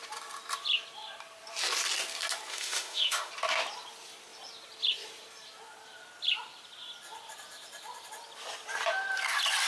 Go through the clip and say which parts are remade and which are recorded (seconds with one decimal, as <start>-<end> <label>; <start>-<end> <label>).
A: 0.0-2.5 recorded; 2.5-3.3 remade; 3.3-9.7 recorded